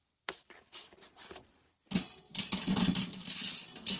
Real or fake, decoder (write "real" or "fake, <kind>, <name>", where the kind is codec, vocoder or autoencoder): real